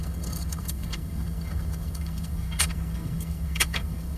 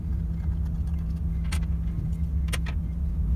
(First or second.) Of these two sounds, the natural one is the second